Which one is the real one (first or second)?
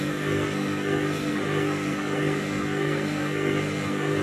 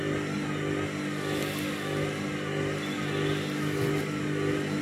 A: second